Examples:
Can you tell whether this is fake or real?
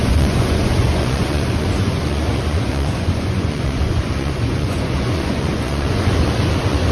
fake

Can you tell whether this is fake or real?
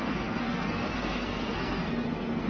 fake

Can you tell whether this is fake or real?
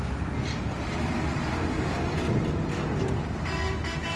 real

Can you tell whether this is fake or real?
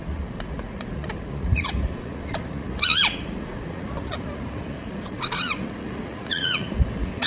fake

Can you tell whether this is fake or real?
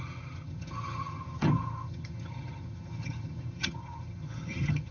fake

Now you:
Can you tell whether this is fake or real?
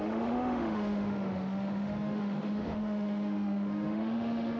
fake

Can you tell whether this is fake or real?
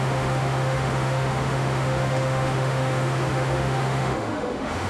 fake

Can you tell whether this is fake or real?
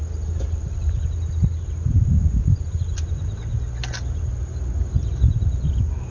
real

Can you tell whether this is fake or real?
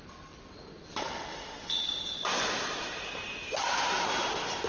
real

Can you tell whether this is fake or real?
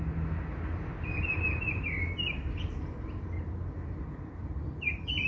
real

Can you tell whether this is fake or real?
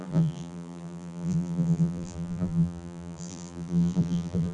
fake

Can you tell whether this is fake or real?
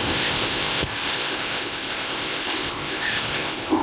fake